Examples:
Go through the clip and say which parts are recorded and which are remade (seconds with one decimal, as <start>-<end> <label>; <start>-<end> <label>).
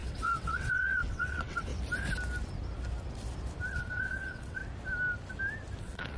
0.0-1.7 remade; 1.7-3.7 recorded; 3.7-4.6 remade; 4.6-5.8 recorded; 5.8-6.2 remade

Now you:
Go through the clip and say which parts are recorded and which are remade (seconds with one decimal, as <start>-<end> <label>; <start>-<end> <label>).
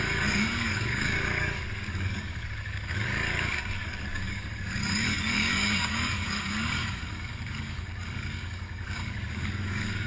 0.0-10.1 remade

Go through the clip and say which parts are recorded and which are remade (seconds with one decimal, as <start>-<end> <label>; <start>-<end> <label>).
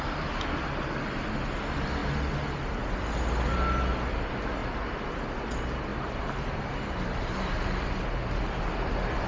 0.0-5.9 recorded; 5.9-8.6 remade; 8.6-9.3 recorded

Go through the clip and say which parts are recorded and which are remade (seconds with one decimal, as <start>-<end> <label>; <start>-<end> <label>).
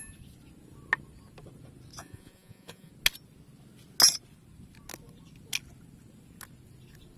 0.0-2.0 recorded; 2.0-2.9 remade; 2.9-7.2 recorded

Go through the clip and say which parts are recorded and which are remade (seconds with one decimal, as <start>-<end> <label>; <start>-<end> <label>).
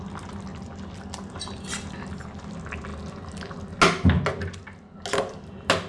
0.0-5.9 recorded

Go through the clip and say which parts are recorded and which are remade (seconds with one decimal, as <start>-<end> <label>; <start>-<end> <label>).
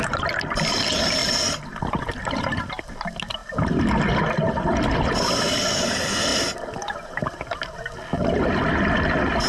0.0-9.5 recorded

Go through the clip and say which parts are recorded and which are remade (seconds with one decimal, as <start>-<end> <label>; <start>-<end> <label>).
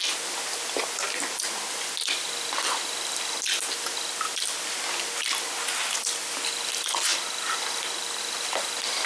0.0-9.1 recorded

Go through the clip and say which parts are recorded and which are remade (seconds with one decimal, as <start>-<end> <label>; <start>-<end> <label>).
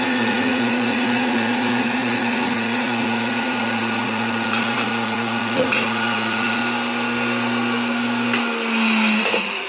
0.0-6.6 remade; 6.6-9.2 recorded; 9.2-9.7 remade